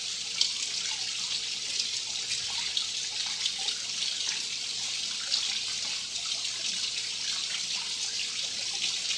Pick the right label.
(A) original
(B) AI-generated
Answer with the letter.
A